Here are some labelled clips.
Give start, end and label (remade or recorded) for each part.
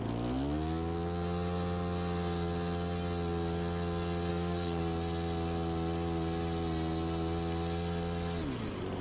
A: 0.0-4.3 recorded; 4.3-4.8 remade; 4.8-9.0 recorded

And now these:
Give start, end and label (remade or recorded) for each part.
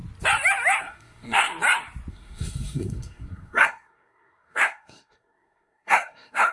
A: 0.0-0.8 recorded; 0.8-1.5 remade; 1.5-2.1 recorded; 2.1-6.5 remade